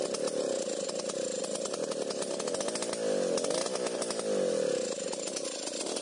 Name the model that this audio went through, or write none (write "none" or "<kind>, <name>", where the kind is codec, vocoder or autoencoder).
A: none